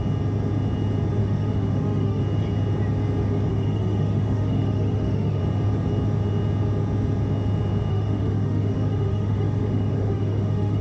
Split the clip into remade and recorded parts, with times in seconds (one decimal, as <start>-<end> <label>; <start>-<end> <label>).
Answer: 0.0-1.2 recorded; 1.2-2.2 remade; 2.2-3.5 recorded; 3.5-5.4 remade; 5.4-7.9 recorded; 7.9-10.8 remade